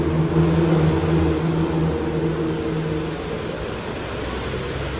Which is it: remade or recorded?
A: recorded